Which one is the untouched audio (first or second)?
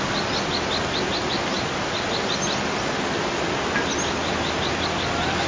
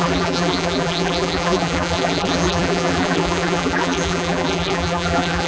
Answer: first